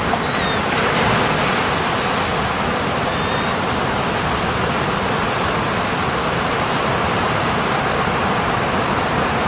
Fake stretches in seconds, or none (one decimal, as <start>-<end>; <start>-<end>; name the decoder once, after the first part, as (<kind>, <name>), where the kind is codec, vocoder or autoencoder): none

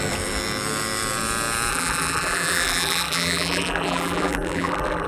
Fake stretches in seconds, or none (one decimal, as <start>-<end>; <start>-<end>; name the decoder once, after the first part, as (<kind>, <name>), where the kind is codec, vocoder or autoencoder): 1.7-5.1 (vocoder, BigVGAN v2)

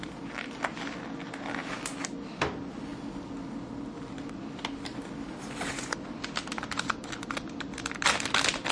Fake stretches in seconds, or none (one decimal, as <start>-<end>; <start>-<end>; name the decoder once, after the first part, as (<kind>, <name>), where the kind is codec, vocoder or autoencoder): none

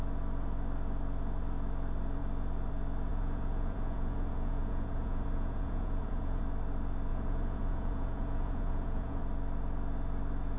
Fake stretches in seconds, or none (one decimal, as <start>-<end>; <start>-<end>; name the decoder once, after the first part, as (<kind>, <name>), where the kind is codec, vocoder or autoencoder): 3.1-6.4 (vocoder, Vocos); 7.1-9.2

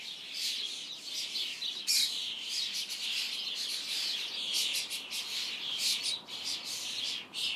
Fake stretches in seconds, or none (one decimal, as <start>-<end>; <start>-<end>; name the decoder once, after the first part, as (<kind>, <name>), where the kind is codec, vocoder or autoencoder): none

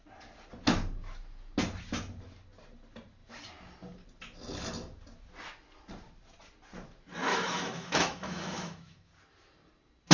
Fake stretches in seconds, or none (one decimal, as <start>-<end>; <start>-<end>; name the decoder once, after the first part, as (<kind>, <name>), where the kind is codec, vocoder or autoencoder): 7.3-9.1 (autoencoder, DAC-VAE)

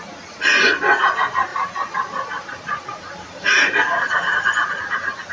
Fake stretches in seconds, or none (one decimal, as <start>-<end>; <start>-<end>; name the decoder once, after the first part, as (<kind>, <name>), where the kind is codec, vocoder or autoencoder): 1.5-4.7 (vocoder, BigVGAN v2)

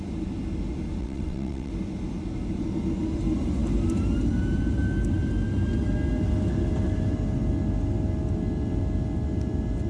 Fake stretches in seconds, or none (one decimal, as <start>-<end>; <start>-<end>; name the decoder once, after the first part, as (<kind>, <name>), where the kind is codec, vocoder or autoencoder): 1.0-1.7 (vocoder, WaveNeXt)